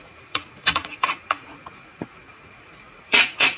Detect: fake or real fake